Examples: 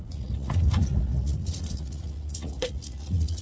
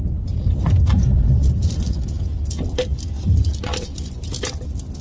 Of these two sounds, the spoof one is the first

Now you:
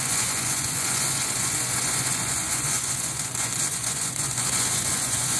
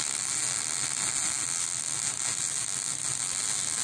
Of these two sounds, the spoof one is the first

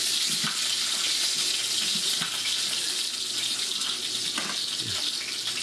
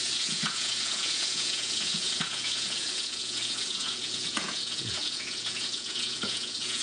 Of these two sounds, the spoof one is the second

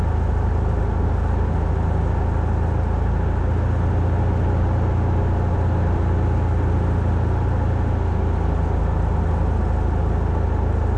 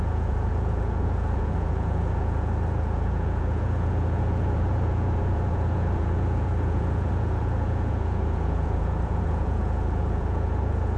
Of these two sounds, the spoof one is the second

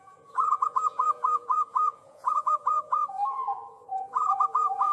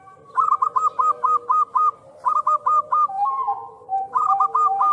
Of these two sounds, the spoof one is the first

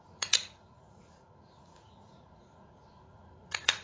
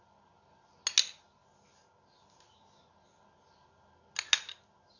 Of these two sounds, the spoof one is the first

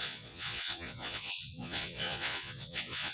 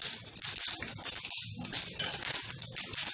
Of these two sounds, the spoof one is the first